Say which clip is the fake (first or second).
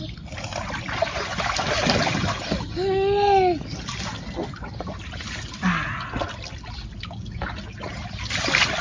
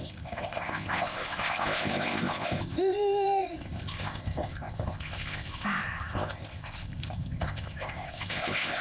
second